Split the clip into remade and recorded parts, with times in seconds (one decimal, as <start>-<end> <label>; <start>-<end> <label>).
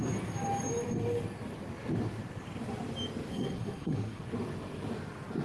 0.0-3.3 recorded; 3.3-4.2 remade; 4.2-5.4 recorded